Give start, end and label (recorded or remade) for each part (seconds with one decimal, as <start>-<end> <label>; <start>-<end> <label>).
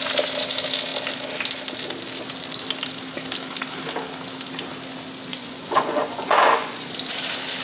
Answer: 0.0-5.3 recorded; 5.3-6.9 remade; 6.9-7.6 recorded